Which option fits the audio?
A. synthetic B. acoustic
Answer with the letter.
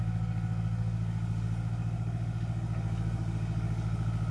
A